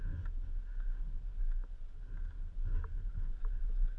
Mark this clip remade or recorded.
recorded